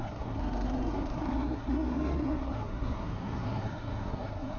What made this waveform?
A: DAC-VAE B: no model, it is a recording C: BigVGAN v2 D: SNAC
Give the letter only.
D